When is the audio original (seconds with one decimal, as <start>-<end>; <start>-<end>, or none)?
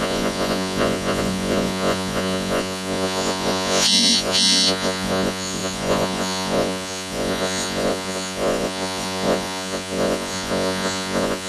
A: none